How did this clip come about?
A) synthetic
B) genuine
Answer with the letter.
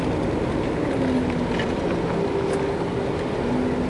B